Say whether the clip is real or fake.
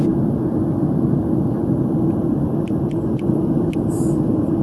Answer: real